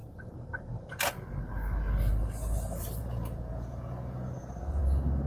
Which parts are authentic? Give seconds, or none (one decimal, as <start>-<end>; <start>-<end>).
0.0-3.0; 4.8-5.3